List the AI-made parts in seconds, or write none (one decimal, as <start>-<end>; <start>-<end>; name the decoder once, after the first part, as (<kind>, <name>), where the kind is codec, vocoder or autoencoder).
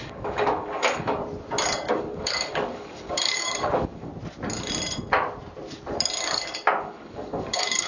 0.0-1.2 (codec, DAC); 1.9-4.1; 6.8-7.9